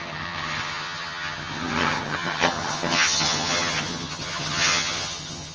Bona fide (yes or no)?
no